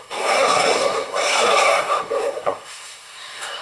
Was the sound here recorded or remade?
remade